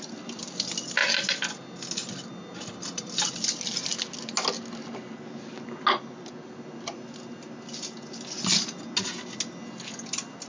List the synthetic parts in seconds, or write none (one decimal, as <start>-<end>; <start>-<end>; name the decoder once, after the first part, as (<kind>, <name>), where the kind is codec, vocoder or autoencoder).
none